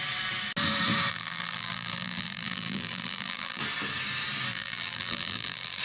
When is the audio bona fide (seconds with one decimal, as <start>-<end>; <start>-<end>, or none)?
0.0-1.1; 3.6-4.5